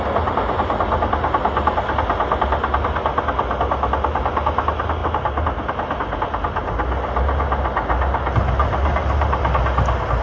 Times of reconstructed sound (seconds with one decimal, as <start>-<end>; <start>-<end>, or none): none